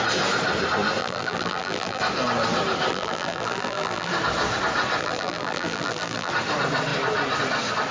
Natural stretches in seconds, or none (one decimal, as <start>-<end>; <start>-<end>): 0.0-1.0; 2.0-2.9; 4.1-5.0; 6.3-7.9